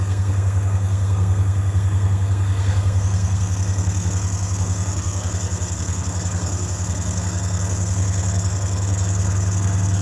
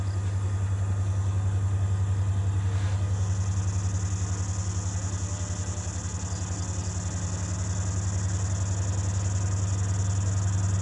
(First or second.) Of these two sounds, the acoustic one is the second